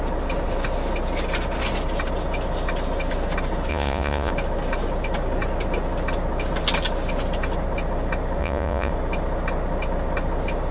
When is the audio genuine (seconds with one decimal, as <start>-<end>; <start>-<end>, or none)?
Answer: 0.0-3.7; 4.3-8.4; 8.9-10.7